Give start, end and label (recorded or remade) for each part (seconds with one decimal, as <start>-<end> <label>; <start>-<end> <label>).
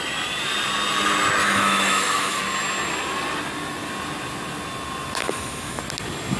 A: 0.0-1.4 recorded; 1.4-2.4 remade; 2.4-5.2 recorded; 5.2-5.8 remade; 5.8-6.4 recorded